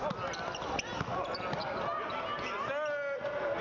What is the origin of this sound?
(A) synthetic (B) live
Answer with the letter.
B